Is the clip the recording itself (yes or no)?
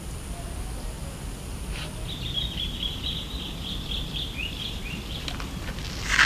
no